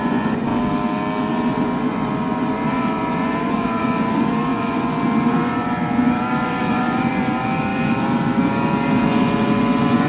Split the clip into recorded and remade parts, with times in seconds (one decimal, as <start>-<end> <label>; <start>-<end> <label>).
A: 0.0-0.5 remade; 0.5-1.3 recorded; 1.3-10.1 remade